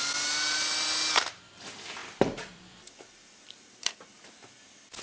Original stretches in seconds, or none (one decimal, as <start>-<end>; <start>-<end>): 0.0-2.0; 4.4-5.0